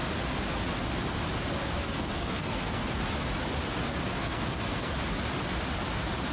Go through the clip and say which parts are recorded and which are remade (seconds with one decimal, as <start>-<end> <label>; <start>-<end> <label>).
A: 0.0-1.8 recorded; 1.8-2.8 remade; 2.8-4.2 recorded; 4.2-4.9 remade; 4.9-6.3 recorded